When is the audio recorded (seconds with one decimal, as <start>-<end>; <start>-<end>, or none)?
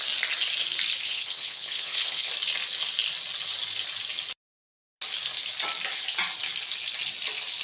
0.0-1.0; 2.3-7.6